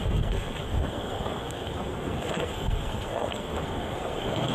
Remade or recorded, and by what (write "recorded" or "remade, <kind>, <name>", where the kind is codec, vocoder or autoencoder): remade, codec, SNAC